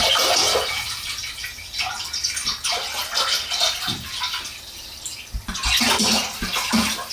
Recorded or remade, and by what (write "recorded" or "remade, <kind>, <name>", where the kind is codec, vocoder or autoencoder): recorded